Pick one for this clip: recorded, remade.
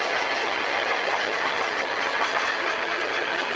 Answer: remade